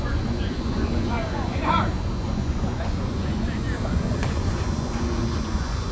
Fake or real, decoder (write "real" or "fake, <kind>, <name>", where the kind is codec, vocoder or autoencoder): fake, vocoder, Vocos